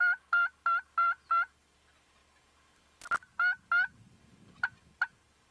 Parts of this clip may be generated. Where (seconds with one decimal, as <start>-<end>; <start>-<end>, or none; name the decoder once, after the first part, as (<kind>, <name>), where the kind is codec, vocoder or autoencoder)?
none